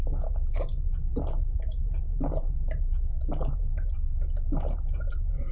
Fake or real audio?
fake